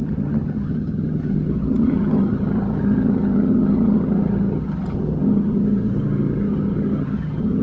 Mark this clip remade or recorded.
remade